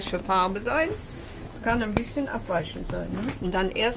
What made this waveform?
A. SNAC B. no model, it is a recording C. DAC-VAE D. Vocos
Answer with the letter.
C